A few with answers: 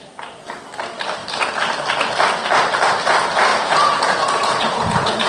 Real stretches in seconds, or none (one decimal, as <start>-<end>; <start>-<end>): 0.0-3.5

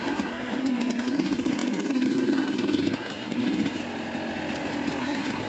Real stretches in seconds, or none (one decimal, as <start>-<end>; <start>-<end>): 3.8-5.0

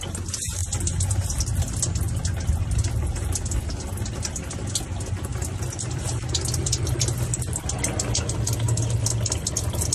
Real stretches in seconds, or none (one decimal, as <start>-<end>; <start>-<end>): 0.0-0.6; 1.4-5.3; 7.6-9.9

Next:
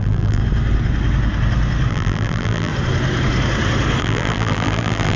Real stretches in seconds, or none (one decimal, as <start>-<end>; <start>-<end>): 0.4-1.9; 2.7-4.0

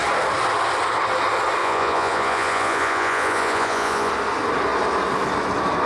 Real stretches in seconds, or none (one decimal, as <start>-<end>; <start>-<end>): 0.0-1.6; 4.1-5.9

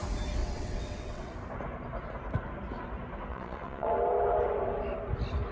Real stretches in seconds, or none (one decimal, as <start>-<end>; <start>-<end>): 0.0-0.4; 1.3-3.3; 3.9-5.5

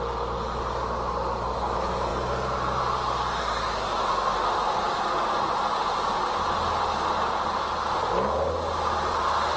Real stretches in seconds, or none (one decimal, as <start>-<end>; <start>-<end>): 0.0-9.6

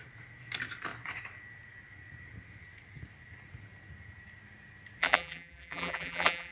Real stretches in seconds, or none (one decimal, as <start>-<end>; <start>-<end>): 0.0-5.0